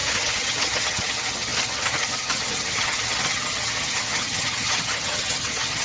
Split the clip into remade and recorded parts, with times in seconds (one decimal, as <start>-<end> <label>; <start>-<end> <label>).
0.0-5.8 remade